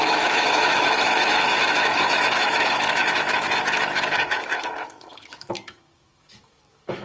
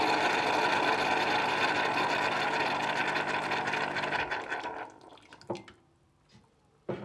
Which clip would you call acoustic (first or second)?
second